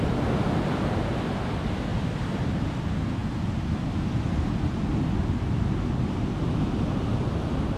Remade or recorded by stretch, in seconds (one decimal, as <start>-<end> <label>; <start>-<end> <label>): 0.0-1.9 recorded; 1.9-2.8 remade; 2.8-7.8 recorded